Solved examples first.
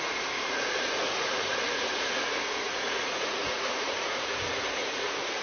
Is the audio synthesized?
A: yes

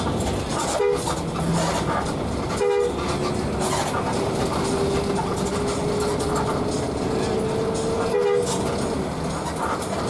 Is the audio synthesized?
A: no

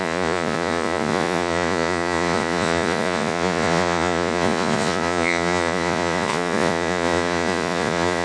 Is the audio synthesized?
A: yes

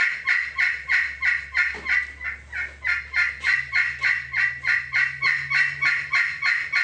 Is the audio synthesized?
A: no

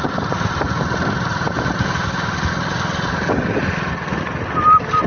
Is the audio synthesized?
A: no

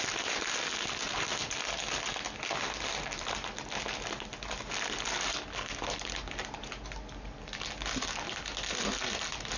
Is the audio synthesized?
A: no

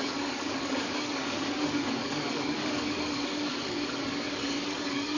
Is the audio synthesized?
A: yes